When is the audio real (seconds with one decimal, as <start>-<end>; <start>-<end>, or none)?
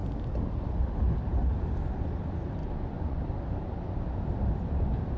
0.0-2.6; 3.2-5.2